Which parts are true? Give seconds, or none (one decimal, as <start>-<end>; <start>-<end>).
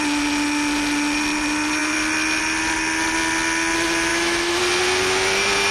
0.0-4.1; 4.6-5.7